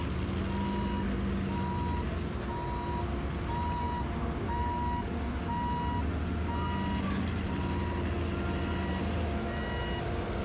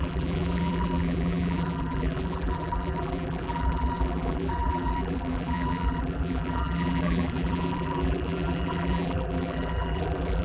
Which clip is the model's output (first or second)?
second